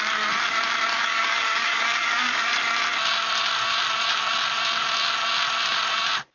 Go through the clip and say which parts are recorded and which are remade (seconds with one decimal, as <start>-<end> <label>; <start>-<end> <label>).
0.0-0.9 recorded; 0.9-2.5 remade; 2.5-6.3 recorded